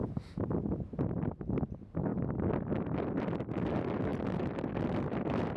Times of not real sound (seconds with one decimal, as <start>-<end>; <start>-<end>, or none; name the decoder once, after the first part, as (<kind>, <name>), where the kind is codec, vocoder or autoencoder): none

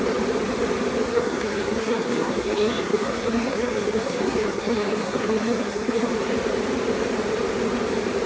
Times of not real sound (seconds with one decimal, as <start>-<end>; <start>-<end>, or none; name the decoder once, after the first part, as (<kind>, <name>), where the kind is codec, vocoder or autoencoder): 1.1-6.1 (codec, SNAC)

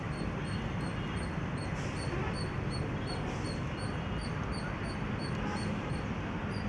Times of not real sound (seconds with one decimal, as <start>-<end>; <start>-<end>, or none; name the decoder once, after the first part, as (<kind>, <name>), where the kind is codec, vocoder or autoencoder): none

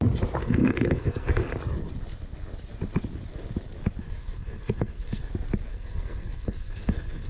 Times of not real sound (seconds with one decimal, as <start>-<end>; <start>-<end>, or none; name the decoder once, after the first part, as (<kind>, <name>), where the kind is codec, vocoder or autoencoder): 0.4-1.4 (codec, SNAC); 4.0-5.3; 5.7-7.3

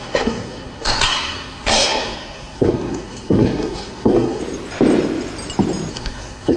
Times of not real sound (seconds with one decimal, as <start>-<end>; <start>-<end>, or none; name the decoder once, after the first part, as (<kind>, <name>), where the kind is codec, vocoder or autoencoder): 0.0-4.4 (codec, SNAC); 5.9-6.6

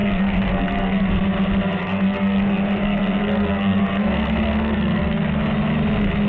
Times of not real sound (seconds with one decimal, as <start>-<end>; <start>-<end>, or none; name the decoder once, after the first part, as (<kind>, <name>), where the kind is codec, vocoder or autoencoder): 0.0-1.1 (codec, SNAC); 1.8-5.4

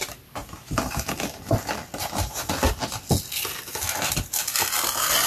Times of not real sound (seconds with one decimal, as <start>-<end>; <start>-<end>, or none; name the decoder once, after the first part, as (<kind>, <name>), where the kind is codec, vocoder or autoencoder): none